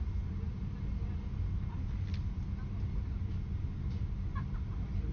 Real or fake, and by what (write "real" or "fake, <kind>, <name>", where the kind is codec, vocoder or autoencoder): real